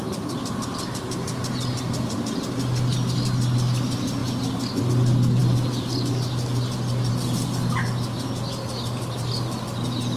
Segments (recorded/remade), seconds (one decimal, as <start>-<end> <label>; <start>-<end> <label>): 0.0-10.2 recorded